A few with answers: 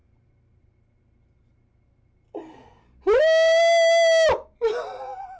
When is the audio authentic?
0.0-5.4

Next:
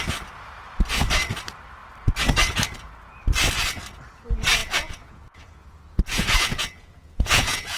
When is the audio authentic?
0.0-4.6

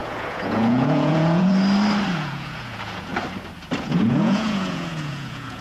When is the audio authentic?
1.5-2.1; 3.1-3.8

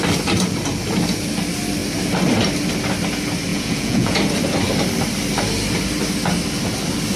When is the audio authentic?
0.0-3.5; 4.2-7.2

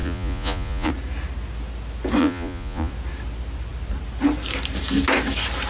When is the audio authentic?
0.9-2.2; 2.9-5.7

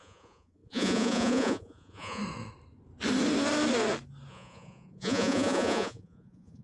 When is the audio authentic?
2.2-4.3